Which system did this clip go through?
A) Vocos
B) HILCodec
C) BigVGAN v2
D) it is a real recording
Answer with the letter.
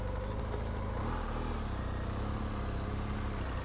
D